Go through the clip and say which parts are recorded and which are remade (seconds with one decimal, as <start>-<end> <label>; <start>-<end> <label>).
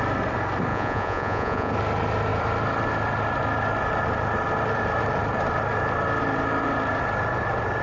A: 0.0-0.7 recorded; 0.7-1.7 remade; 1.7-7.8 recorded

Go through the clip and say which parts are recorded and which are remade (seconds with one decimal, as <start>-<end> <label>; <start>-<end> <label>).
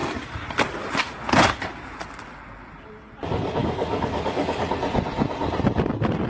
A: 0.0-3.6 recorded; 3.6-4.6 remade; 4.6-6.3 recorded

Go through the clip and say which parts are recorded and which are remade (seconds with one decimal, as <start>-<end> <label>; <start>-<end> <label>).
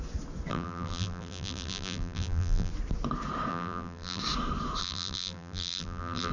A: 0.0-0.5 recorded; 0.5-2.7 remade; 2.7-3.5 recorded; 3.5-4.2 remade; 4.2-4.8 recorded; 4.8-6.3 remade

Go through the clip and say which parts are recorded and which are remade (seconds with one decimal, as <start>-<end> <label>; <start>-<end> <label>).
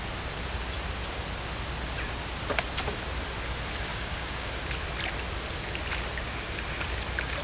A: 0.0-3.9 recorded; 3.9-4.5 remade; 4.5-7.4 recorded